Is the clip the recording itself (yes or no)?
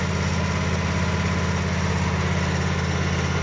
yes